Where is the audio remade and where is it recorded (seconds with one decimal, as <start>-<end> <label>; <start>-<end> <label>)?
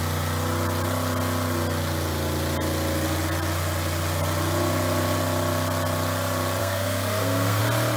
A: 0.0-6.6 recorded; 6.6-7.6 remade; 7.6-8.0 recorded